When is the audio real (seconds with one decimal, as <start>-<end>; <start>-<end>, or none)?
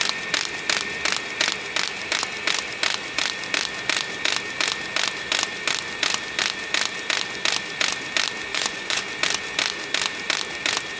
0.0-8.5; 9.0-11.0